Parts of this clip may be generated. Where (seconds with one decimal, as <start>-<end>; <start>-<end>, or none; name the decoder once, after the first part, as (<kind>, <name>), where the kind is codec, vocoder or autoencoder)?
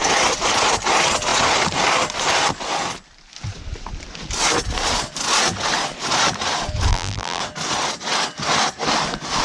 6.9-7.4 (vocoder, BigVGAN v2)